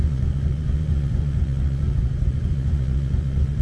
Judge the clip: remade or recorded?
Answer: remade